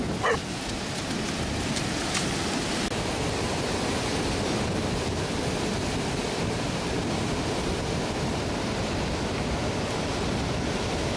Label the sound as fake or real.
real